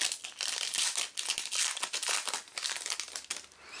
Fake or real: real